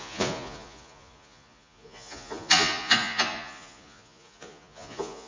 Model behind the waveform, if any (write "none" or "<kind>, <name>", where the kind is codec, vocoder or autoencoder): vocoder, Vocos